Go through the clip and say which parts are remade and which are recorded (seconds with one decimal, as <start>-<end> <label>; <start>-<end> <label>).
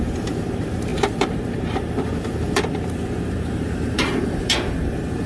0.0-5.3 remade